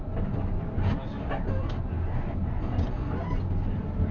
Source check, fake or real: real